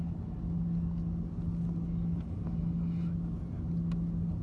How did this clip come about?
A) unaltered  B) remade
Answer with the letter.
A